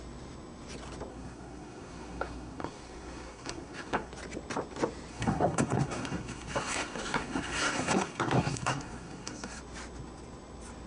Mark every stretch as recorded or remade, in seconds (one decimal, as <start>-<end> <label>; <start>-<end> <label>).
0.0-1.1 recorded; 1.1-4.1 remade; 4.1-5.1 recorded; 5.1-9.6 remade; 9.6-10.9 recorded